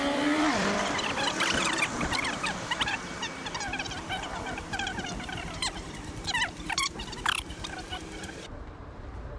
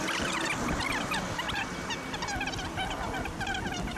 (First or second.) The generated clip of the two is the first